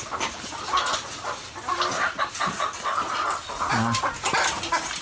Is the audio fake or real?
real